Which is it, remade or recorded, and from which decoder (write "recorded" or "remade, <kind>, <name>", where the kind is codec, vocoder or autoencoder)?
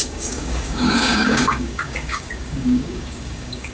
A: remade, codec, DAC